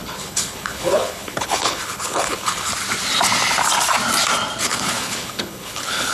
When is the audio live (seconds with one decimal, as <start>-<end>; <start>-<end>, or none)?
2.7-4.6